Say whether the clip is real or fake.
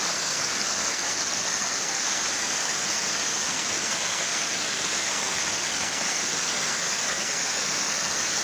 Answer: fake